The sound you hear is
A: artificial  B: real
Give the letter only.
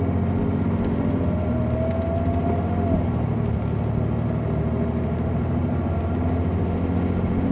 B